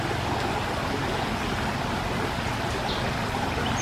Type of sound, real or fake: real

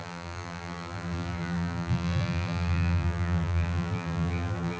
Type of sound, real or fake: fake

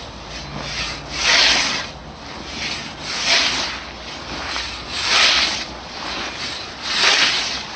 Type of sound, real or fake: real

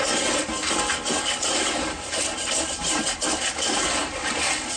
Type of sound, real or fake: real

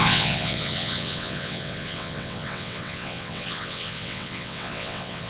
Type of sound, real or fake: fake